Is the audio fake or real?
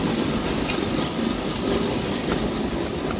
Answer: real